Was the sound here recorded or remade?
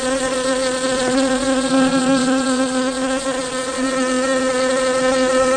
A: remade